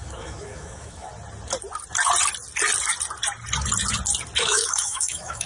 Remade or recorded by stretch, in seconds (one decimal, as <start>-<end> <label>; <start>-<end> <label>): 0.0-1.1 remade; 1.1-4.4 recorded; 4.4-5.5 remade